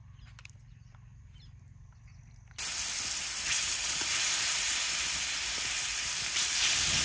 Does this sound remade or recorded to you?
recorded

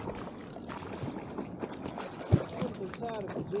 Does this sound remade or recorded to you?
recorded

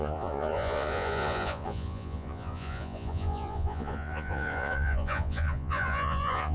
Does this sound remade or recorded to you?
remade